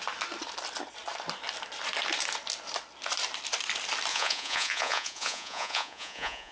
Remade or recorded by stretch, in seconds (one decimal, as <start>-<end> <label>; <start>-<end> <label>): 0.0-4.1 recorded; 4.1-6.5 remade